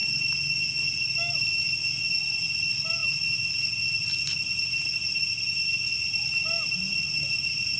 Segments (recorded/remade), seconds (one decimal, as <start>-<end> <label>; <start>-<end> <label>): 0.0-7.8 recorded

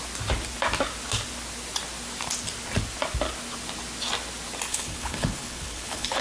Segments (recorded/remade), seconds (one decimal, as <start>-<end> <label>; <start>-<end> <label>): 0.0-4.7 recorded; 4.7-6.2 remade

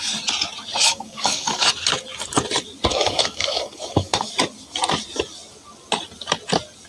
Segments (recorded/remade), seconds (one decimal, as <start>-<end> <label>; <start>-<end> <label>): 0.0-0.8 recorded; 0.8-1.7 remade; 1.7-2.9 recorded; 2.9-4.3 remade; 4.3-6.9 recorded

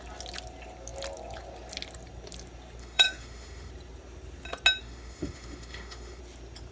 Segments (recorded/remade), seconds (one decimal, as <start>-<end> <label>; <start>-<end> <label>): 0.0-2.8 recorded; 2.8-3.7 remade; 3.7-4.8 recorded; 4.8-6.2 remade; 6.2-6.7 recorded

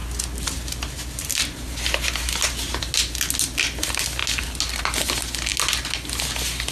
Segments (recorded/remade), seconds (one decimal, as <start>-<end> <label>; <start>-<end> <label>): 0.0-6.7 recorded

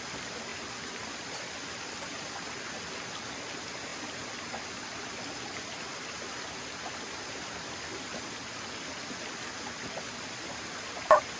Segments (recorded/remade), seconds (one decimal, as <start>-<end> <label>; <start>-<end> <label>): 0.0-11.4 recorded

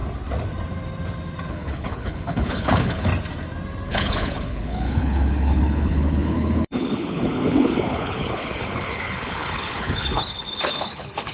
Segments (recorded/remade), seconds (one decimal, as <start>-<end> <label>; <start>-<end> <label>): 0.0-1.5 recorded; 1.5-3.1 remade; 3.1-3.9 recorded; 3.9-11.3 remade

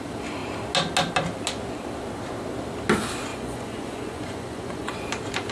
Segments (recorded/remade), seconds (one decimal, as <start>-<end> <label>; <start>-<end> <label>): 0.0-3.3 recorded; 3.3-5.0 remade; 5.0-5.5 recorded